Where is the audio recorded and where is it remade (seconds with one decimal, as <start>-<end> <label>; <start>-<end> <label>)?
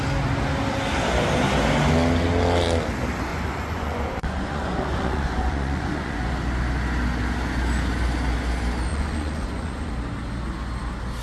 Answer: 0.0-3.3 recorded; 3.3-6.3 remade; 6.3-8.9 recorded; 8.9-9.9 remade; 9.9-11.2 recorded